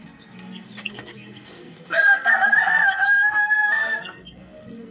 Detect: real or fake fake